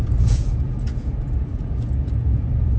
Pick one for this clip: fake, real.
fake